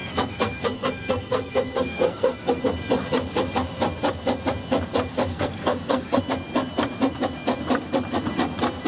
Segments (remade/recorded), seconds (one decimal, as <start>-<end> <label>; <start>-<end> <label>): 0.0-2.6 remade; 2.6-5.3 recorded; 5.3-6.2 remade; 6.2-8.9 recorded

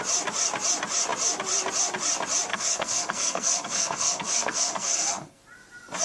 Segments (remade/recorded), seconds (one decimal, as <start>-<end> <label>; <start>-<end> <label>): 0.0-2.5 recorded; 2.5-5.4 remade; 5.4-6.0 recorded

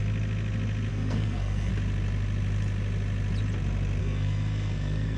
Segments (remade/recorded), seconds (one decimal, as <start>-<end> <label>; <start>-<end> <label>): 0.0-0.9 recorded; 0.9-1.7 remade; 1.7-4.0 recorded; 4.0-5.2 remade

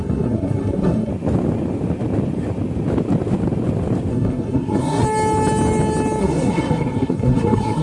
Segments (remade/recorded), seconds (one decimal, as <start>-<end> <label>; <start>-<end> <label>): 0.0-1.1 remade; 1.1-4.1 recorded; 4.1-5.0 remade; 5.0-6.2 recorded; 6.2-7.8 remade

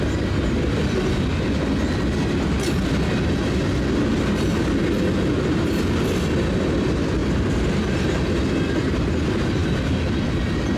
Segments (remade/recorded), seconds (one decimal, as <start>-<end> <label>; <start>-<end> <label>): 0.0-10.8 recorded